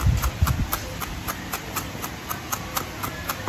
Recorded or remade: recorded